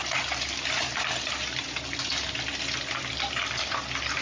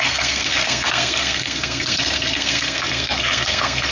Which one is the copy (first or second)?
second